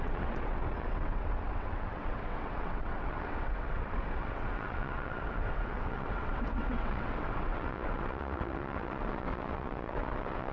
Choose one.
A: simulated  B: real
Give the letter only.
A